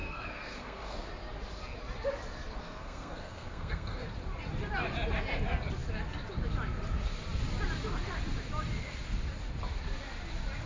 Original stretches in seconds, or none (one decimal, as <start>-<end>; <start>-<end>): 1.1-2.6; 4.0-10.7